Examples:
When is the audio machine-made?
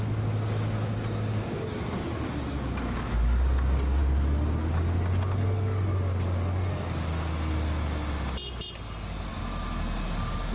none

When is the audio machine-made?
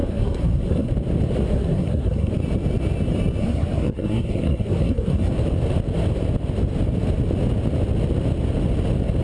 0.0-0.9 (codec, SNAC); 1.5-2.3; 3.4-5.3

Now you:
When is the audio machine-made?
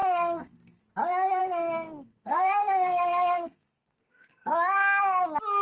0.0-0.8 (codec, SNAC); 1.4-4.5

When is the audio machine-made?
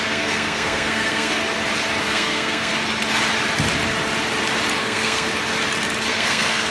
0.0-1.4 (codec, SNAC); 2.0-2.7; 4.8-5.3; 6.1-6.7